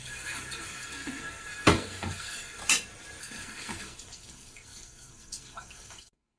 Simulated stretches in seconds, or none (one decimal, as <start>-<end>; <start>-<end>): 0.0-2.6; 3.2-6.4